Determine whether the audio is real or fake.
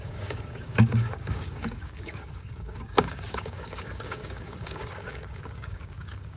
fake